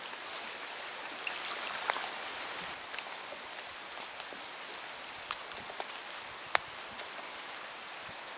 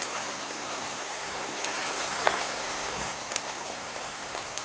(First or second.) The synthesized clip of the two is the second